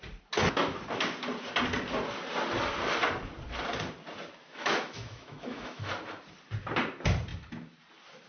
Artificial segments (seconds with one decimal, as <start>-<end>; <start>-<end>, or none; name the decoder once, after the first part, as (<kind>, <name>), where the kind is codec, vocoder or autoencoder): 4.4-5.9 (autoencoder, DAC-VAE)